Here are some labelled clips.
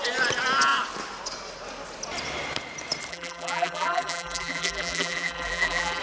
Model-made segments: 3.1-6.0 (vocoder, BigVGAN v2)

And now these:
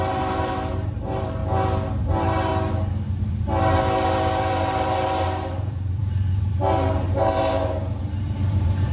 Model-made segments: 0.0-1.4 (vocoder, BigVGAN v2); 2.0-2.5; 4.5-8.9

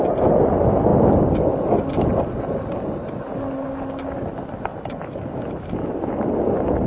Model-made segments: 0.9-1.8 (vocoder, BigVGAN v2); 4.7-5.4